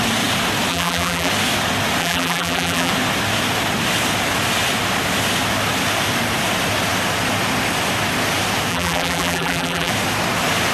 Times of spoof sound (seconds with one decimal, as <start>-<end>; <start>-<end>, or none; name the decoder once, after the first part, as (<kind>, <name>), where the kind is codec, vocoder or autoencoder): 0.7-1.3 (vocoder, BigVGAN v2); 2.0-2.9; 8.7-9.9